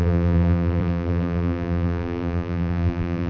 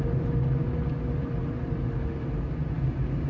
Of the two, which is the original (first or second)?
second